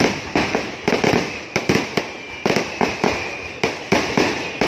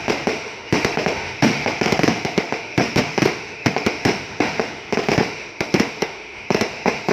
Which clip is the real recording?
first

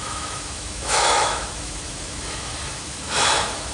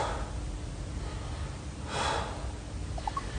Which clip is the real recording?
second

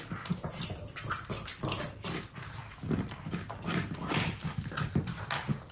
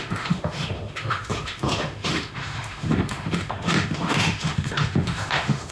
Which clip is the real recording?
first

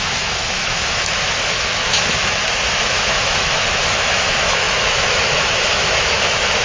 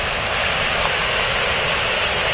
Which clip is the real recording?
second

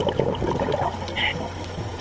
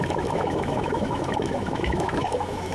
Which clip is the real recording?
first